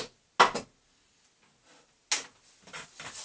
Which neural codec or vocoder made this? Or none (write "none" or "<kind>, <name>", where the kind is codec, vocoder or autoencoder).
none